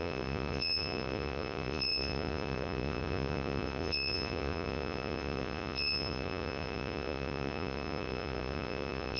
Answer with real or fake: fake